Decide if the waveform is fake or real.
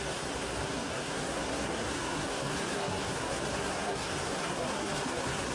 fake